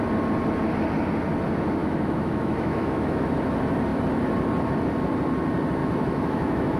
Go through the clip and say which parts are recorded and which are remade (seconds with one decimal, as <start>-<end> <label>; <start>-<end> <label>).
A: 0.0-1.8 recorded; 1.8-3.3 remade; 3.3-5.8 recorded; 5.8-6.8 remade